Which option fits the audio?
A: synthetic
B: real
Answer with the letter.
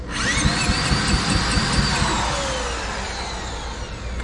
B